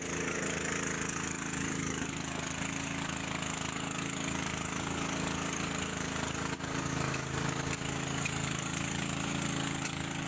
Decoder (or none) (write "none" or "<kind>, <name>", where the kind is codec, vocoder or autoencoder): codec, DAC